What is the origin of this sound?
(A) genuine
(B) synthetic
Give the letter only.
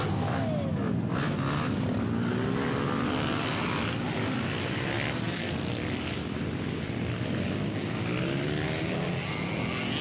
A